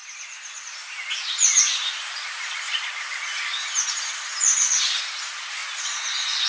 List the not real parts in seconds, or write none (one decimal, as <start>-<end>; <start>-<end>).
none